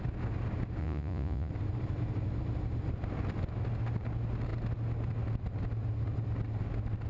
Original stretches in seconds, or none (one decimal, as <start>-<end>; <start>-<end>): 0.0-0.8; 1.5-7.1